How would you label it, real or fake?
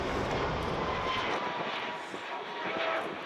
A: real